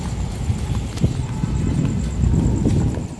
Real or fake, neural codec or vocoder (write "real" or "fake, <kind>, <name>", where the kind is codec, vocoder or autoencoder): real